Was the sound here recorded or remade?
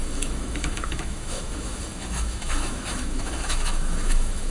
remade